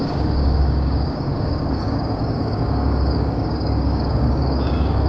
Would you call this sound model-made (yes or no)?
yes